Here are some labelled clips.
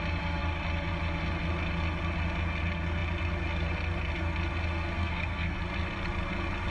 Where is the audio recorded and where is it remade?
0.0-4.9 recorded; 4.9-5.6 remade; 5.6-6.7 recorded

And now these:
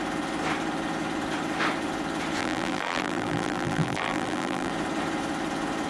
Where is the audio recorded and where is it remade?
0.0-2.4 recorded; 2.4-4.7 remade; 4.7-5.9 recorded